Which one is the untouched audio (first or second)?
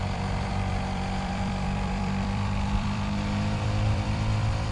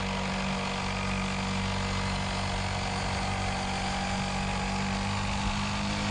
second